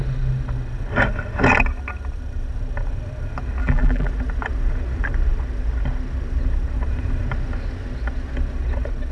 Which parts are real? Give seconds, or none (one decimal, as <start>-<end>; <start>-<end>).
0.0-3.6; 4.1-9.1